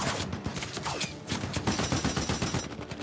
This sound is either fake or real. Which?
real